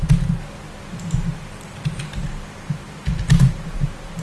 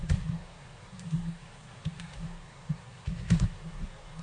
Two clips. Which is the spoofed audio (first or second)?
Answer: second